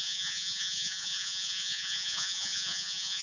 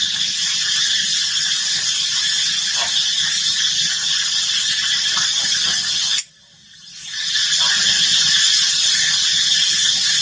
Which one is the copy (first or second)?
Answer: first